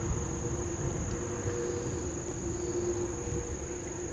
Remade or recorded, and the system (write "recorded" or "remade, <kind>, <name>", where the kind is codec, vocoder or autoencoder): recorded